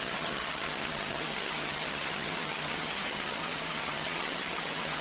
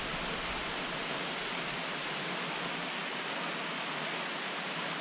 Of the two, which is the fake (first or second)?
first